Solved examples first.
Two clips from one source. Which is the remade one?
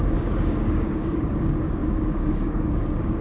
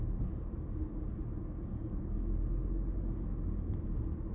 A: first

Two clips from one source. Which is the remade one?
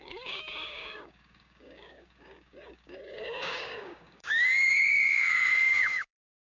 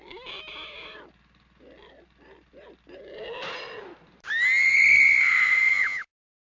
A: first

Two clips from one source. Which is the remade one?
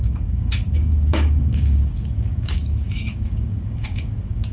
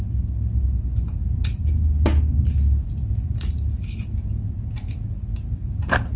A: first